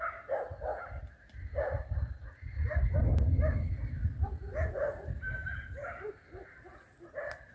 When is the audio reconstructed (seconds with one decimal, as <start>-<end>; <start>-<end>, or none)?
none